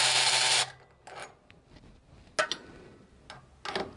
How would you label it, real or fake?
real